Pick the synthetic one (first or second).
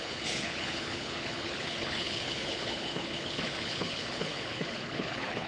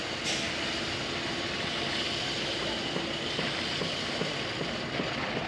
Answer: first